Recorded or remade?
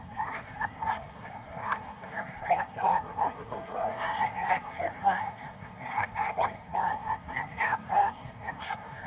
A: remade